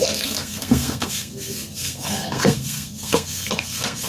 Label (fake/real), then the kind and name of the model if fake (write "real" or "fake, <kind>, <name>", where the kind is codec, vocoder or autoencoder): fake, codec, SNAC